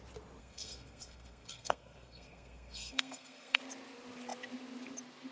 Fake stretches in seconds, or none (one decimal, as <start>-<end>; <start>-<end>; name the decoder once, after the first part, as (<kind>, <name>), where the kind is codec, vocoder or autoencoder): 0.4-3.6 (codec, SNAC)